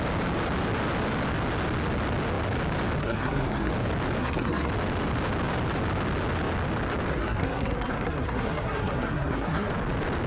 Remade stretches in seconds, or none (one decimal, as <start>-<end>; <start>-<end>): 3.0-3.7; 4.2-4.7; 7.1-9.7